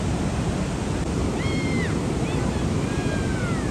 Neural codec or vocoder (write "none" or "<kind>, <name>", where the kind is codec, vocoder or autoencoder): none